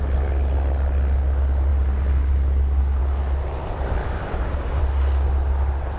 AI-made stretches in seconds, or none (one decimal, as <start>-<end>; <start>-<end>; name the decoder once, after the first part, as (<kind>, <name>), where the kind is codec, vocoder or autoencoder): 4.0-4.8 (codec, DAC)